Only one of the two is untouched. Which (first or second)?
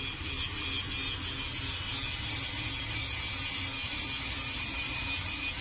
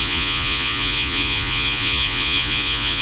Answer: first